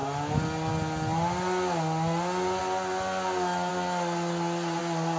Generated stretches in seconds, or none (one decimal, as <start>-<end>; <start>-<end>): none